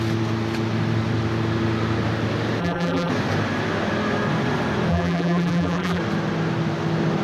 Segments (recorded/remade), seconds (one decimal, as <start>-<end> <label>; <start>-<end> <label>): 0.0-2.6 recorded; 2.6-3.1 remade; 3.1-4.9 recorded; 4.9-6.0 remade; 6.0-7.2 recorded

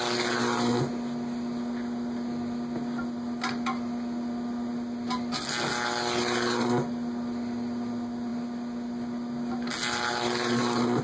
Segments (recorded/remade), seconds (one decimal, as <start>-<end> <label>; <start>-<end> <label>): 0.0-11.0 recorded

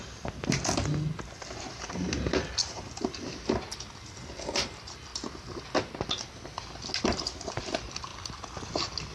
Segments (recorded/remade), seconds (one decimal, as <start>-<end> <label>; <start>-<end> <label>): 0.0-9.1 recorded